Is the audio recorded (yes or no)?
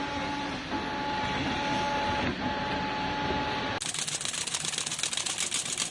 yes